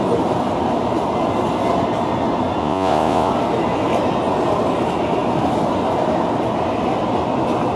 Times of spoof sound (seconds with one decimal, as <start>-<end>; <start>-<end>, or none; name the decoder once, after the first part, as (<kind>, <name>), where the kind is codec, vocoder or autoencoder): 2.6-3.3 (vocoder, Vocos)

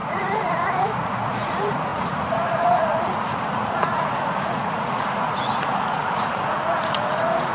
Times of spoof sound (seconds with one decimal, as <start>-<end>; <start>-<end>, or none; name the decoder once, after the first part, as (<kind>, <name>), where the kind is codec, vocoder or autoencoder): 0.0-7.5 (vocoder, Vocos)

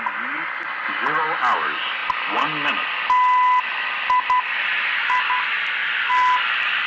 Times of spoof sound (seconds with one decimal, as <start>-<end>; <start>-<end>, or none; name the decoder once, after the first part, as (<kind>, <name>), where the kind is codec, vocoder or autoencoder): none

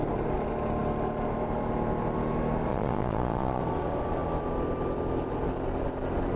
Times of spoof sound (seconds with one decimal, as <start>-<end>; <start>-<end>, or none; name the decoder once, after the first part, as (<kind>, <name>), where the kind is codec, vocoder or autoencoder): 2.7-3.6 (vocoder, Vocos)

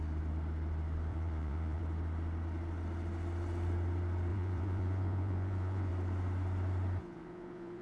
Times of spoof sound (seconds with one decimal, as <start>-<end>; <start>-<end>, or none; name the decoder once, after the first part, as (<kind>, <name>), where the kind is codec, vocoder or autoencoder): 1.1-1.8 (vocoder, Vocos); 4.3-5.9; 7.0-7.8

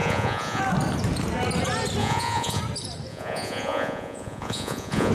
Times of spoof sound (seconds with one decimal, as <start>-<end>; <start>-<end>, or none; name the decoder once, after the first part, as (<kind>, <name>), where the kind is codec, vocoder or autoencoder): 0.0-0.6 (vocoder, Vocos); 2.0-2.6; 3.1-5.1